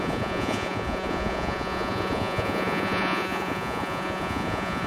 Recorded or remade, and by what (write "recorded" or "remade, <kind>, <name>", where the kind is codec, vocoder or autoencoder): remade, vocoder, Vocos